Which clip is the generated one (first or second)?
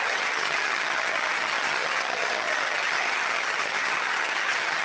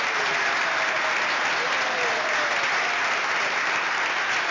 first